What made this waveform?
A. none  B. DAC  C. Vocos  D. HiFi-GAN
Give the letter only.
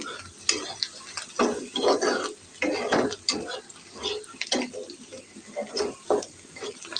A